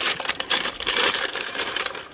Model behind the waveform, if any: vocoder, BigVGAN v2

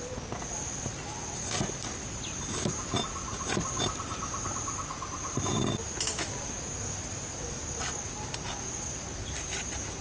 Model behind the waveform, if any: none